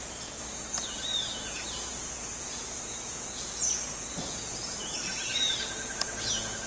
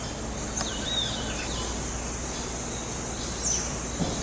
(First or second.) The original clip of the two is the second